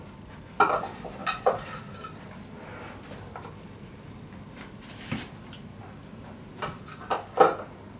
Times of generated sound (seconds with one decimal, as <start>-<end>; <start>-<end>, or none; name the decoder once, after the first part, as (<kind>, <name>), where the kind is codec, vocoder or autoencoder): none

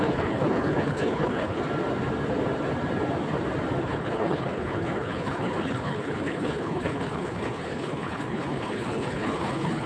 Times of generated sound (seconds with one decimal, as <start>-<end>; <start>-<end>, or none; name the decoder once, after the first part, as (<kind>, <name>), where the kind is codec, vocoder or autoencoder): 0.0-1.6 (codec, HILCodec); 3.8-9.9

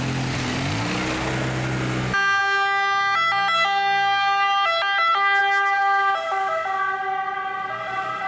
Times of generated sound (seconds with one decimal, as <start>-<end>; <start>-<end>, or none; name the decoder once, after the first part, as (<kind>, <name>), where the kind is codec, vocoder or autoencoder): none

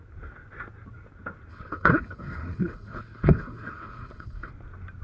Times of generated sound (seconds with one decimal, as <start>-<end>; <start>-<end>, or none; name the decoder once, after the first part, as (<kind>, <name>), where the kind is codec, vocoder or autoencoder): 1.5-4.5 (codec, HILCodec)